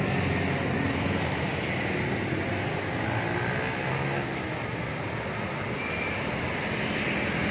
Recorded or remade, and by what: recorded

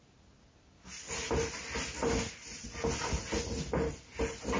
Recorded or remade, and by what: recorded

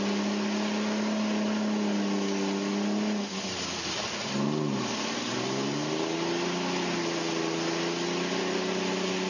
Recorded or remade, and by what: recorded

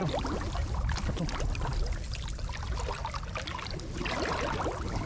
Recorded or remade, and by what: recorded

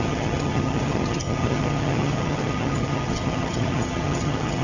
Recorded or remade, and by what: remade, vocoder, HiFi-GAN